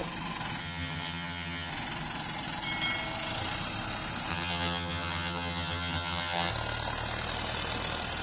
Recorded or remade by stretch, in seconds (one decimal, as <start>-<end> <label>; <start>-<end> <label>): 0.0-0.6 recorded; 0.6-1.7 remade; 1.7-4.3 recorded; 4.3-6.5 remade; 6.5-8.2 recorded